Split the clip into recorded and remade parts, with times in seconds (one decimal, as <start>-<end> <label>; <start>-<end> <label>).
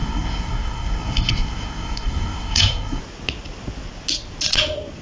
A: 0.0-3.0 remade; 3.0-5.0 recorded